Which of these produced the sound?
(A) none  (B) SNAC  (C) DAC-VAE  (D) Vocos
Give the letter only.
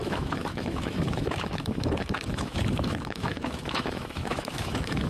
C